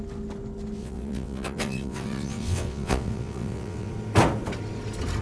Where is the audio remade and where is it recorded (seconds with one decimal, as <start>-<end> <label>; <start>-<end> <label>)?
0.0-0.8 recorded; 0.8-3.9 remade; 3.9-5.2 recorded